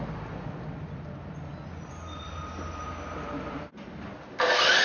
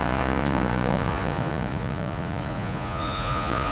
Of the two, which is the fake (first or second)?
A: second